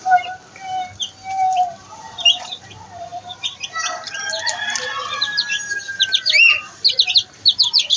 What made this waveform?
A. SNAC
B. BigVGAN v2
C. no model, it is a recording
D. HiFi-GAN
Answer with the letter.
B